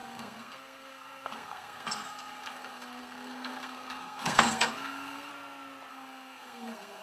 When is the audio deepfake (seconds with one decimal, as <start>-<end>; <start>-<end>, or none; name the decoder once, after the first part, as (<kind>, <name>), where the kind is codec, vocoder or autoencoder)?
0.0-5.3 (codec, SNAC); 5.9-7.0